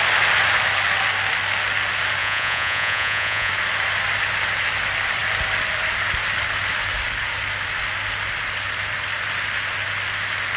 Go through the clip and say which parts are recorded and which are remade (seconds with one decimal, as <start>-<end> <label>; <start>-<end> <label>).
0.0-2.2 recorded; 2.2-3.5 remade; 3.5-10.6 recorded